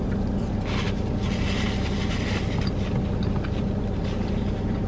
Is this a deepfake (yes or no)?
no